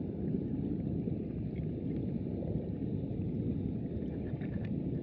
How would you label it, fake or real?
real